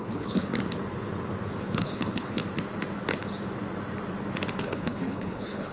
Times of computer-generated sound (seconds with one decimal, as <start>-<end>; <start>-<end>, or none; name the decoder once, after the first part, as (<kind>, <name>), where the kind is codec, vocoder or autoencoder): 0.0-0.5 (codec, HILCodec); 1.6-2.4; 4.6-5.7